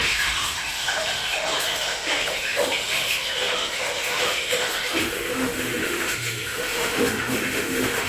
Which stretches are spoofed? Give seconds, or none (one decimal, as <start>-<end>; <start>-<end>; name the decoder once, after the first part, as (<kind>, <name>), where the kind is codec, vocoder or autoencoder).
0.0-8.1 (autoencoder, DAC-VAE)